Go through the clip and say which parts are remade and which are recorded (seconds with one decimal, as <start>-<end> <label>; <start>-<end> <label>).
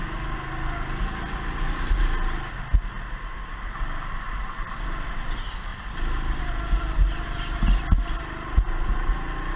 0.0-9.6 recorded